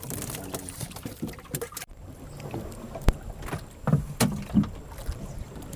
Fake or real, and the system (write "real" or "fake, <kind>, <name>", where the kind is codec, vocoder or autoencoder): real